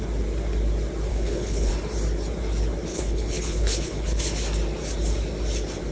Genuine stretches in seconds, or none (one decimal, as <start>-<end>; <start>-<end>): 0.0-1.1; 1.7-2.9; 4.2-5.9